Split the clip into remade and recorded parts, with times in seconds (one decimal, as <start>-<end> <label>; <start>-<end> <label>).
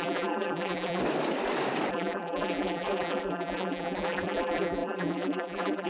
0.0-1.0 remade; 1.0-1.9 recorded; 1.9-5.9 remade